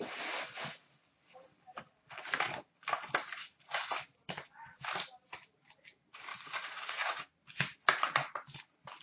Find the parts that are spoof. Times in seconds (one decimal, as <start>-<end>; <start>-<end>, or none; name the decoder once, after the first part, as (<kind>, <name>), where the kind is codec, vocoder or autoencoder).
6.3-7.3 (vocoder, Vocos)